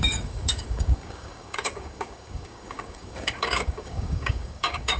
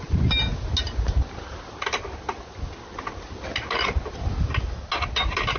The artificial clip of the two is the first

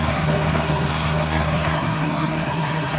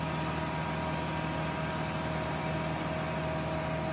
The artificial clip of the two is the first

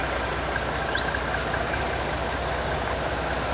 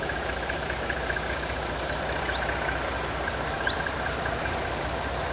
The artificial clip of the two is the second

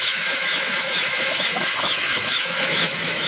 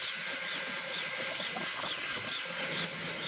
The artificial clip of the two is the first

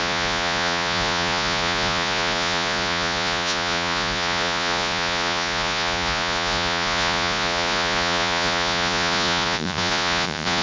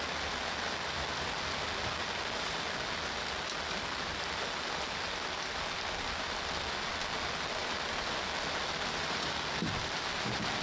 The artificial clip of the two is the first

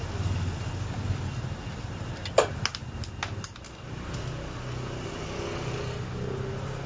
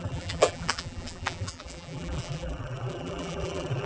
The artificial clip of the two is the second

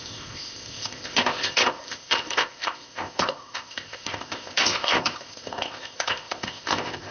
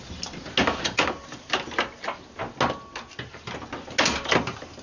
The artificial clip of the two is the first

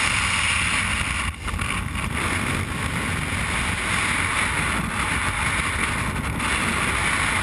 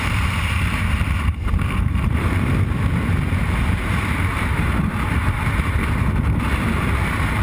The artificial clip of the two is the second